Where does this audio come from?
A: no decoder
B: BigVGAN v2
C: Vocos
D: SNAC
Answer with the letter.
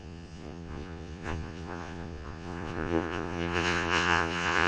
C